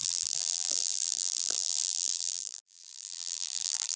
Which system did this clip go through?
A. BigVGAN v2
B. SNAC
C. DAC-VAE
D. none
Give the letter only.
A